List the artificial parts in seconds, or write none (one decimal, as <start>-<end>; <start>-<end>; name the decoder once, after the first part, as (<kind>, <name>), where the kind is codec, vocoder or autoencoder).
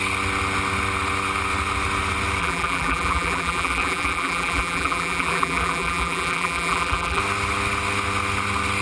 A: 2.4-7.2 (vocoder, BigVGAN v2)